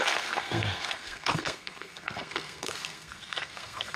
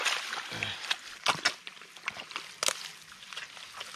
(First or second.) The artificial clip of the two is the first